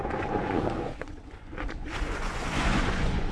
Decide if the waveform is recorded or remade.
remade